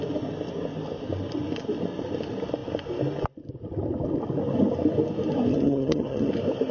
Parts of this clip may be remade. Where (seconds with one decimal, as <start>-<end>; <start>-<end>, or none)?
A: 5.5-6.3